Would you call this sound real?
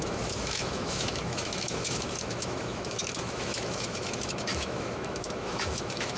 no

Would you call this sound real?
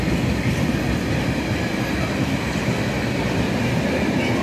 yes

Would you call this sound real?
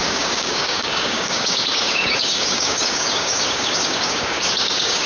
no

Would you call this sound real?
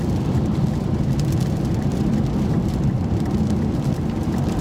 no